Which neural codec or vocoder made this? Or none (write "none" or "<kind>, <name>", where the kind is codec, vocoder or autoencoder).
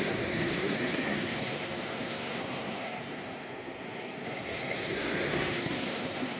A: codec, SNAC